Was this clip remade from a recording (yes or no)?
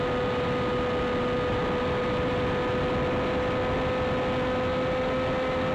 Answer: no